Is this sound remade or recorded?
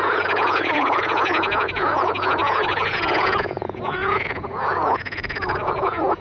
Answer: remade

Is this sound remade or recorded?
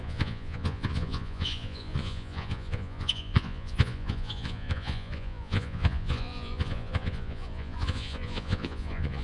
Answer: remade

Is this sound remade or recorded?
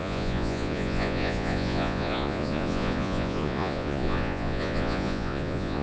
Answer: remade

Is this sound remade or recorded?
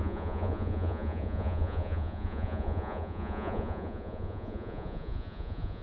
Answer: remade